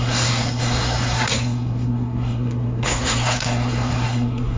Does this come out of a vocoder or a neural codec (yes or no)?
yes